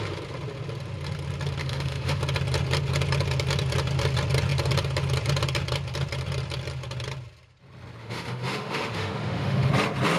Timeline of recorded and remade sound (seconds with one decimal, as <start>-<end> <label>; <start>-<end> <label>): 0.0-1.6 recorded; 1.6-2.2 remade; 2.2-8.0 recorded; 8.0-9.7 remade; 9.7-10.2 recorded